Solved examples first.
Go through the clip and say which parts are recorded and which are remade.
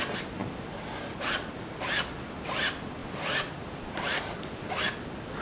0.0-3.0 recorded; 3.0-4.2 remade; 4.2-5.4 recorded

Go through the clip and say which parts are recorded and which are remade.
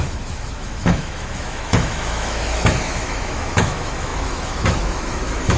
0.0-5.6 remade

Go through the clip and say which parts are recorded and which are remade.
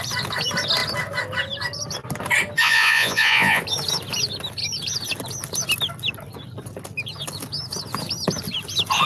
0.0-2.6 recorded; 2.6-3.6 remade; 3.6-9.1 recorded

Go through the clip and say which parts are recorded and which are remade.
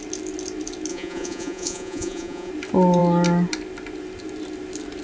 0.0-0.9 recorded; 0.9-2.5 remade; 2.5-5.0 recorded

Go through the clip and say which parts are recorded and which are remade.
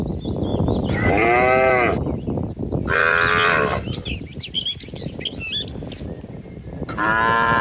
0.0-0.5 recorded; 0.5-1.1 remade; 1.1-7.6 recorded